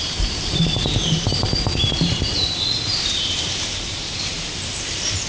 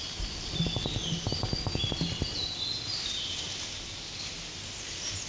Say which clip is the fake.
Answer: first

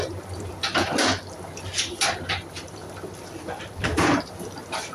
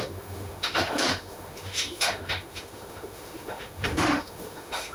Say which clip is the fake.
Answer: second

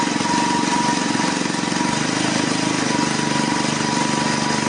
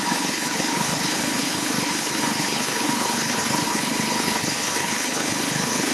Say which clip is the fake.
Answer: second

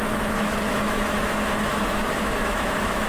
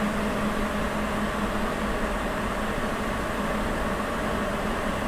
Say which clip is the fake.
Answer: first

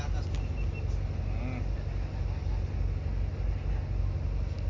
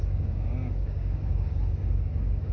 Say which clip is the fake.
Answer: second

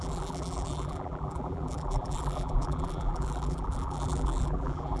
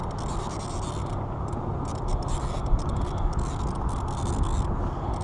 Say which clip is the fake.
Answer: first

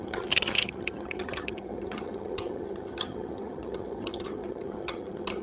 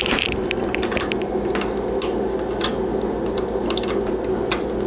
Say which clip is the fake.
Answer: first